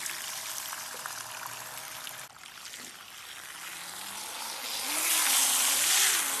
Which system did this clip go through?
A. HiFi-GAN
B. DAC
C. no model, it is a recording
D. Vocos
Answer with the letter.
C